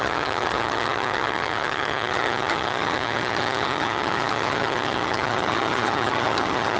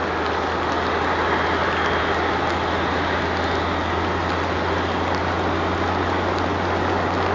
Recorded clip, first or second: second